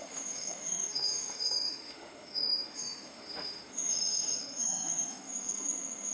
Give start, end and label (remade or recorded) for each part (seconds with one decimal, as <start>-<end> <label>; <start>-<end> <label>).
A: 0.0-6.1 remade